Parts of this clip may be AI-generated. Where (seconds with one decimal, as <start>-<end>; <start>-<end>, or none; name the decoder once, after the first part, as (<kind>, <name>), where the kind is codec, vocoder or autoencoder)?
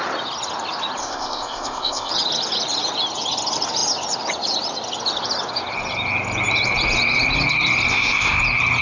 1.0-2.1 (codec, ZipCodec); 7.9-8.4